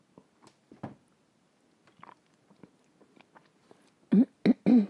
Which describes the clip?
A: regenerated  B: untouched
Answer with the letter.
B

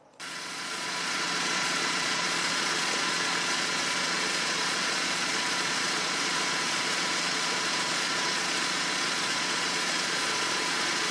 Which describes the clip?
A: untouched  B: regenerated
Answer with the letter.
B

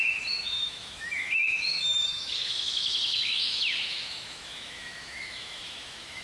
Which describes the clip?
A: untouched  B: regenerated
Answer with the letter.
B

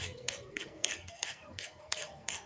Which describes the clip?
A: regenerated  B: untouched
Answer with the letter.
A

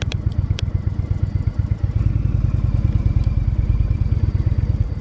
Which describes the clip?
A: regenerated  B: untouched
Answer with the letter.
A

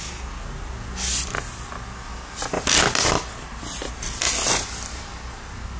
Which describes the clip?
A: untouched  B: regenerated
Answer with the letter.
A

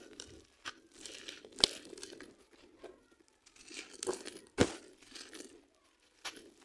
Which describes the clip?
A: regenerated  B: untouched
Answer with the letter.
B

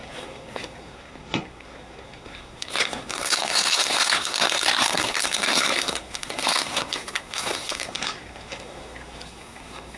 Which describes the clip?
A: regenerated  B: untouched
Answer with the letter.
A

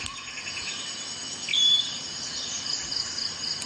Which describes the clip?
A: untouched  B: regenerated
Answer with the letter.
A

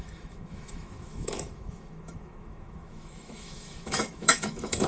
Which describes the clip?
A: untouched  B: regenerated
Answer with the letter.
B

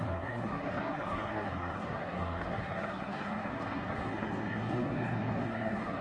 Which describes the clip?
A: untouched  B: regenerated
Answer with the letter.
B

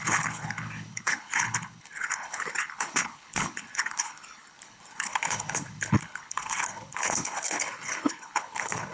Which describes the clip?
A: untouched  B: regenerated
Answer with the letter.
B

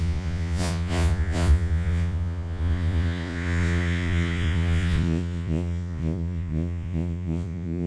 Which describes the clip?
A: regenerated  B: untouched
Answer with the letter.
A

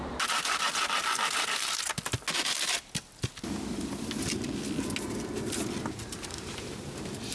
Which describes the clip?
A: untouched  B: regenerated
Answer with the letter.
A